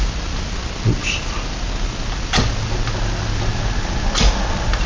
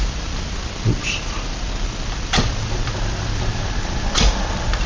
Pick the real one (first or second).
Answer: first